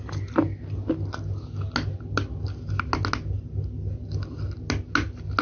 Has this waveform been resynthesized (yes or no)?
no